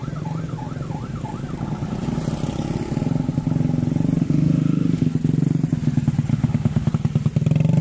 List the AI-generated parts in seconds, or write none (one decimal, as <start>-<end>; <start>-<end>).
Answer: 4.2-5.1; 6.3-6.9